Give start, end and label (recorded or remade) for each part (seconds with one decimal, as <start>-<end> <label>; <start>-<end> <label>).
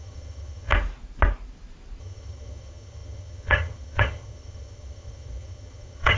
0.0-0.7 remade; 0.7-2.0 recorded; 2.0-6.2 remade